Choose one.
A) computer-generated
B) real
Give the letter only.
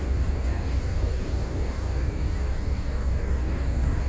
A